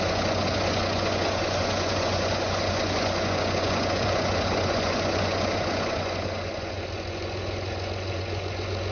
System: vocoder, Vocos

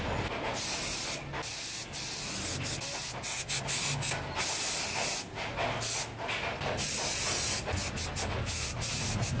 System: none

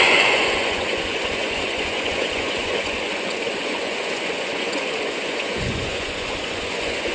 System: vocoder, Vocos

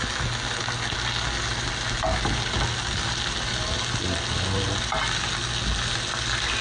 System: none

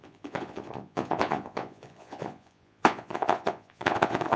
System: vocoder, Vocos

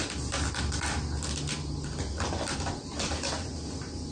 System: none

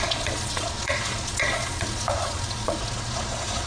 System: vocoder, Vocos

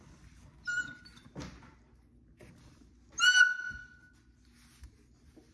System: none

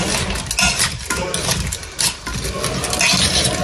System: none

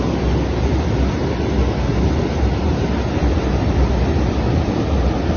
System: none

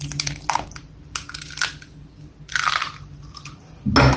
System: none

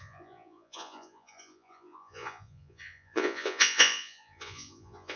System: vocoder, Vocos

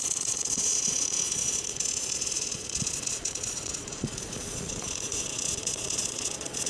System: vocoder, Vocos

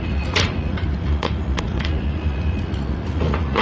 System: vocoder, Vocos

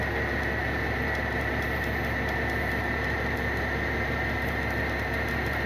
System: none